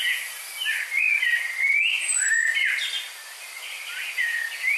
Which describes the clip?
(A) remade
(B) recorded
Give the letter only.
B